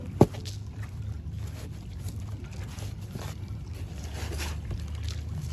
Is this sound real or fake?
real